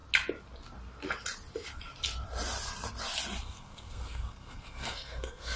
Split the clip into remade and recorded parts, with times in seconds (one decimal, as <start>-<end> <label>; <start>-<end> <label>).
0.0-3.4 recorded; 3.4-5.6 remade